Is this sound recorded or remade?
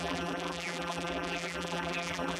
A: remade